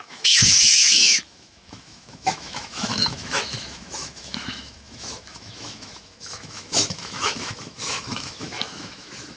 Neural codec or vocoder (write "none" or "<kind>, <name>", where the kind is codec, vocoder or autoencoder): autoencoder, DAC-VAE